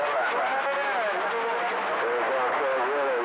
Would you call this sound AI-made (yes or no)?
no